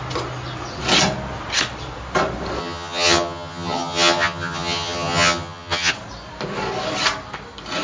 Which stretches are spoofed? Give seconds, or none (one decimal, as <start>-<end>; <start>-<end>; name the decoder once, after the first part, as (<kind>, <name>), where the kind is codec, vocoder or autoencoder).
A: 2.6-5.9 (vocoder, HiFi-GAN)